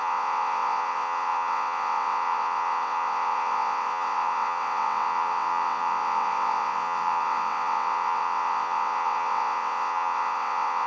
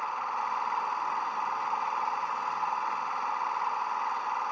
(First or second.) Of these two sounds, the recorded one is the second